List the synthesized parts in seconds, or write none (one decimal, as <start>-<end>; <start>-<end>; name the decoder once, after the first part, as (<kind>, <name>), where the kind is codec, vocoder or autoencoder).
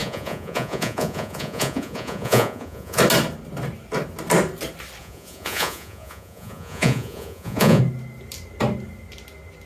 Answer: 0.0-3.0 (vocoder, Vocos); 5.0-7.8